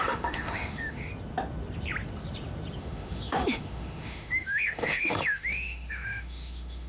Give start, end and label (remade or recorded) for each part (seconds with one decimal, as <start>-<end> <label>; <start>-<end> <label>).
0.0-1.1 remade; 1.1-2.8 recorded; 2.8-6.9 remade